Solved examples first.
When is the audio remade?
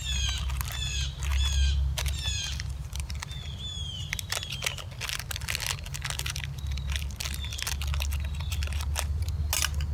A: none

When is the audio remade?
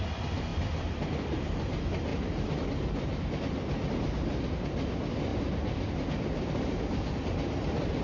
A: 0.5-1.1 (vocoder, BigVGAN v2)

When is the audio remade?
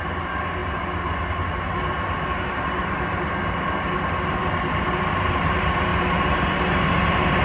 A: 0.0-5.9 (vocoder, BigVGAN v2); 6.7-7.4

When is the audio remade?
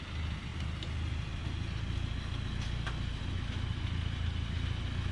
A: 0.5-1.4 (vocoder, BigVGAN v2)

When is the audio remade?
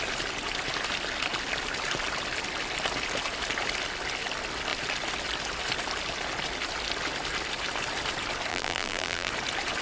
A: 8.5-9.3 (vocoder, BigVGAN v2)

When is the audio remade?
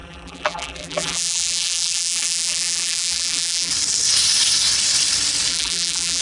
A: 0.0-3.7 (vocoder, BigVGAN v2); 5.5-6.2